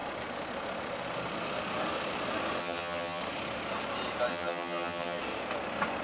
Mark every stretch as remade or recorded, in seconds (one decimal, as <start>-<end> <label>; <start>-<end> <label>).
0.0-2.6 recorded; 2.6-3.2 remade; 3.2-4.3 recorded; 4.3-5.2 remade; 5.2-6.0 recorded